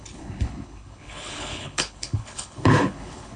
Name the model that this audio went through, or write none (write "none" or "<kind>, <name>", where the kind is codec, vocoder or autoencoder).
codec, HILCodec